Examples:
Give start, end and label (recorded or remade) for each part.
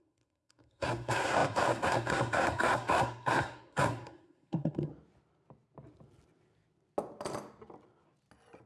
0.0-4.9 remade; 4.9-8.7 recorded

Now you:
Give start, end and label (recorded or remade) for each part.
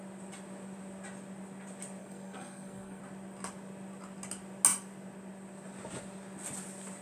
0.0-2.0 recorded; 2.0-3.0 remade; 3.0-7.0 recorded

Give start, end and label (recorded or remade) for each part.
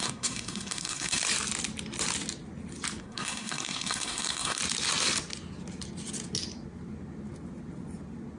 0.0-1.2 remade; 1.2-3.0 recorded; 3.0-4.6 remade; 4.6-8.4 recorded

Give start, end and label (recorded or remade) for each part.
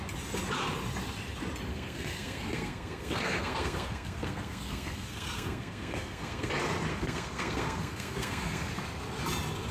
0.0-1.7 recorded; 1.7-6.5 remade; 6.5-6.9 recorded; 6.9-8.7 remade; 8.7-9.7 recorded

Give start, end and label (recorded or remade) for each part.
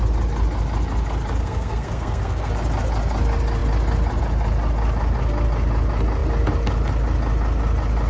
0.0-1.4 recorded; 1.4-2.5 remade; 2.5-8.1 recorded